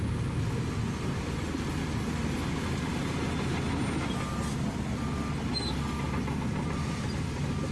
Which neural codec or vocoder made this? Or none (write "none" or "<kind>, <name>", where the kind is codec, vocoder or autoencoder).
none